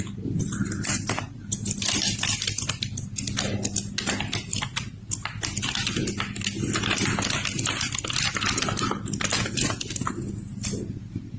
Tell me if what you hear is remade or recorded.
recorded